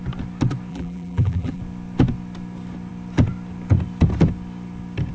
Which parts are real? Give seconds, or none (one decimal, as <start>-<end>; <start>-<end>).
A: 0.0-0.7; 1.6-5.1